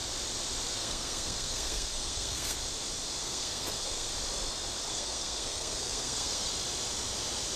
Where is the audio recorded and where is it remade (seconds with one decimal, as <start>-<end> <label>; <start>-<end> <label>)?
0.0-0.7 recorded; 0.7-2.6 remade; 2.6-3.2 recorded; 3.2-4.1 remade; 4.1-4.9 recorded; 4.9-6.5 remade; 6.5-7.6 recorded